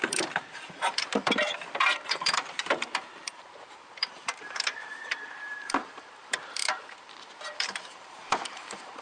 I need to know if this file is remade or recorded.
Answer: remade